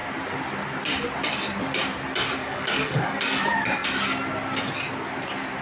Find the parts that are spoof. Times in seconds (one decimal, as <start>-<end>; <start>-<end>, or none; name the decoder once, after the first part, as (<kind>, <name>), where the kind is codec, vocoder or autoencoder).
2.4-3.4 (codec, DAC)